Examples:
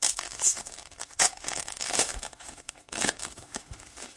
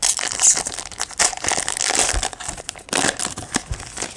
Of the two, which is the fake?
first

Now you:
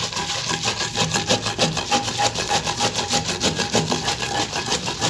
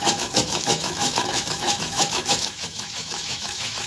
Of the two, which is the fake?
second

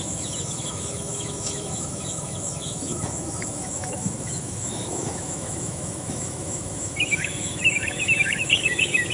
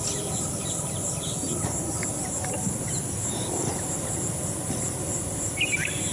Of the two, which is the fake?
first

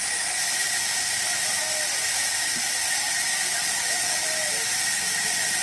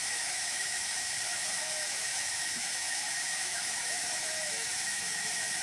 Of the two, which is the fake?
second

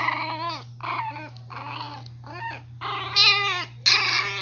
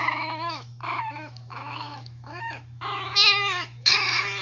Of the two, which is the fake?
second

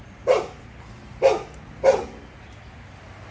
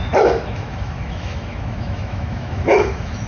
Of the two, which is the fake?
second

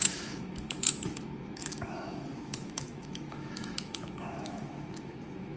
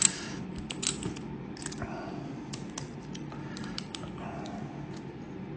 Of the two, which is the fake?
first